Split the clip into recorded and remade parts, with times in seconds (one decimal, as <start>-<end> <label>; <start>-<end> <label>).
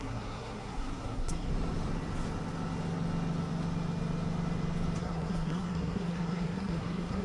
0.0-1.5 remade; 1.5-5.0 recorded; 5.0-7.2 remade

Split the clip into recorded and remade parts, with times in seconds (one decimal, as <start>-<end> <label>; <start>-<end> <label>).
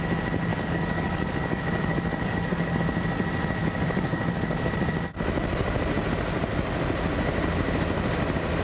0.0-0.5 recorded; 0.5-2.8 remade; 2.8-3.6 recorded; 3.6-4.7 remade; 4.7-8.6 recorded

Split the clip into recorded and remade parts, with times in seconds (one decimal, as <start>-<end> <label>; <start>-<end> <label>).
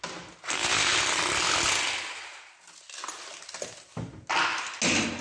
0.0-5.2 recorded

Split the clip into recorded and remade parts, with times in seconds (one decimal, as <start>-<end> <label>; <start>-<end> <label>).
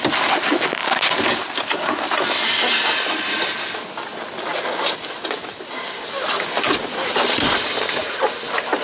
0.0-4.5 recorded; 4.5-7.9 remade; 7.9-8.8 recorded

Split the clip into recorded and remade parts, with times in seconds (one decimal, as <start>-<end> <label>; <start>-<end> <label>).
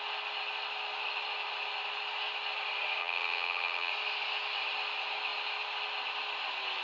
0.0-3.0 recorded; 3.0-3.9 remade; 3.9-6.8 recorded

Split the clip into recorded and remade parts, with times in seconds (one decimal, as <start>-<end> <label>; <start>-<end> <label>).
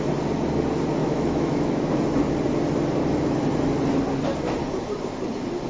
0.0-1.0 recorded; 1.0-1.9 remade; 1.9-5.7 recorded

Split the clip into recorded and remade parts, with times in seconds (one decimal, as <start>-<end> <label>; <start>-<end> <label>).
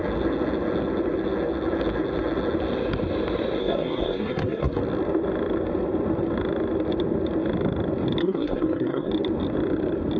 0.0-3.6 recorded; 3.6-4.8 remade; 4.8-8.2 recorded; 8.2-9.1 remade; 9.1-10.2 recorded